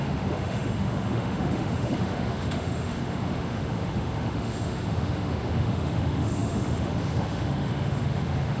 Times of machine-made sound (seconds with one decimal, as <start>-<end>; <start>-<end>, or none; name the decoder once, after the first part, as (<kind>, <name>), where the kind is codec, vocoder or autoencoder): 0.0-8.6 (autoencoder, DAC-VAE)